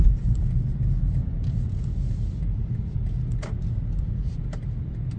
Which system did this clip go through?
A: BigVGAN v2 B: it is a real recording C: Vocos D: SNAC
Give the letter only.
B